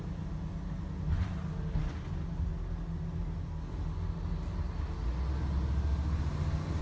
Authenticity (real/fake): real